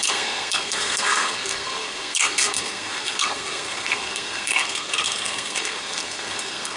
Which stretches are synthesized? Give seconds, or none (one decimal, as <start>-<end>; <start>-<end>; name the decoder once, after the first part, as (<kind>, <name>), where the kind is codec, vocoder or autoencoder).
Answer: 0.0-6.8 (codec, SNAC)